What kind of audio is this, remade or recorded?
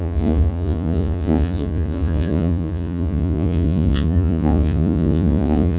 remade